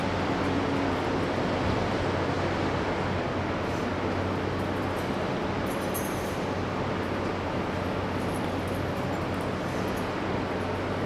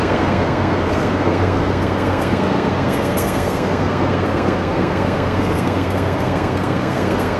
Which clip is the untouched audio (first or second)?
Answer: first